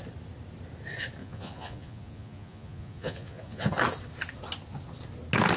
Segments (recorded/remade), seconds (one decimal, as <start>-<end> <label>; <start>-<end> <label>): 0.0-1.2 recorded; 1.2-3.7 remade; 3.7-5.6 recorded